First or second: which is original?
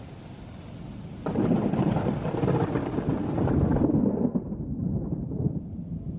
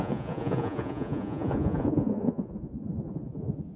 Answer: first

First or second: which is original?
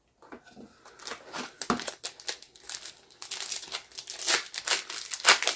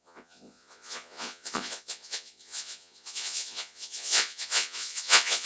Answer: first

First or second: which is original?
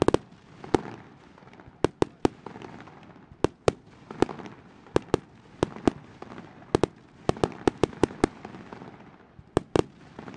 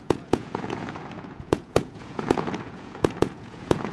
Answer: first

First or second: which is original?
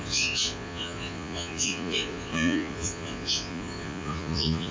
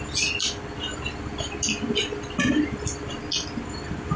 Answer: second